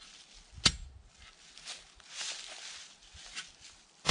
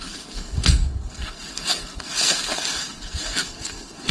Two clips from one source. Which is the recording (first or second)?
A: first